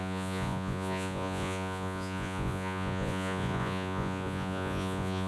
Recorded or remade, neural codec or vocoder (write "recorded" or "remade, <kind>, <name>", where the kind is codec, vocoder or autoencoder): remade, vocoder, Vocos